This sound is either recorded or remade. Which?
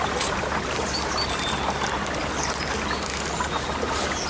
recorded